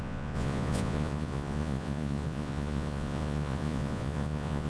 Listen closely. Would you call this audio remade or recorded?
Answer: remade